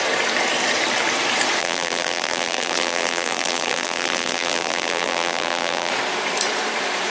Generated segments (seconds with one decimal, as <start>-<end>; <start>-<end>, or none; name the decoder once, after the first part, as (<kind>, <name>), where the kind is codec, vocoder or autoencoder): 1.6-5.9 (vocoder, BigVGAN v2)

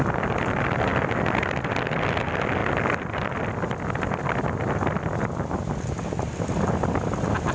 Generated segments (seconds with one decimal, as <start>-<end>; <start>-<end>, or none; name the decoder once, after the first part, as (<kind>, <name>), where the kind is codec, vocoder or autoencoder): none

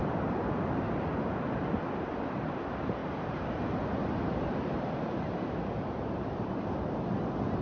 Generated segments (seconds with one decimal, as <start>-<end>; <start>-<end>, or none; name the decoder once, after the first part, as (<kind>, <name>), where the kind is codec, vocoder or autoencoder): 0.0-1.1 (vocoder, BigVGAN v2); 3.0-6.5

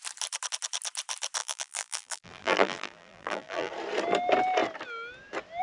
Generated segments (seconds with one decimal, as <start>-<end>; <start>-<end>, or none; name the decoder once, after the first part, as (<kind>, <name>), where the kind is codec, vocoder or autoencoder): 1.4-3.7 (vocoder, BigVGAN v2)

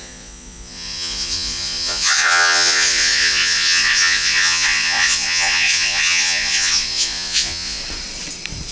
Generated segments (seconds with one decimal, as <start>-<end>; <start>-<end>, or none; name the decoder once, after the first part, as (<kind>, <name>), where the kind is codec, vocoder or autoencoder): 0.0-7.8 (vocoder, Vocos)

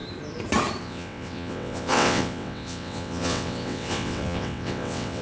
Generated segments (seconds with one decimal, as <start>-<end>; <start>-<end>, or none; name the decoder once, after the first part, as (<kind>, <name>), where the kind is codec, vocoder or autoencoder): 0.8-5.2 (vocoder, WaveNeXt)